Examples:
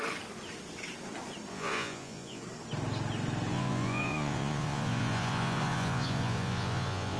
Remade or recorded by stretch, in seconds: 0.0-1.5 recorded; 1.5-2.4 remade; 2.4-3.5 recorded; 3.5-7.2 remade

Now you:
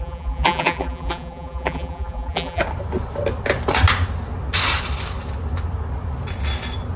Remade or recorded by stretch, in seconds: 0.0-2.6 remade; 2.6-7.0 recorded

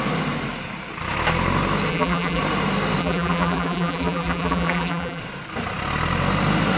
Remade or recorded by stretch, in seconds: 0.0-1.9 recorded; 1.9-2.4 remade; 2.4-3.0 recorded; 3.0-5.2 remade; 5.2-6.8 recorded

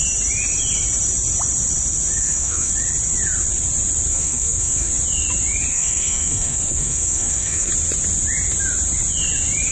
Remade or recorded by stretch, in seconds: 0.0-2.2 recorded; 2.2-2.7 remade; 2.7-4.1 recorded; 4.1-4.9 remade; 4.9-5.7 recorded; 5.7-7.7 remade; 7.7-9.7 recorded

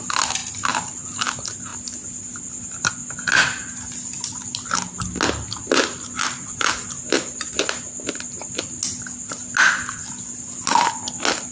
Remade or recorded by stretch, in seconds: 0.0-11.5 recorded

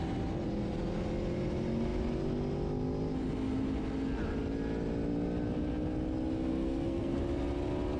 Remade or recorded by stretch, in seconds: 0.0-6.5 recorded; 6.5-7.2 remade; 7.2-8.0 recorded

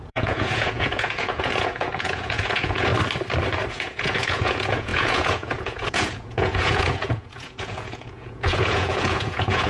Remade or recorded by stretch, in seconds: 0.0-2.9 remade; 2.9-3.7 recorded; 3.7-9.7 remade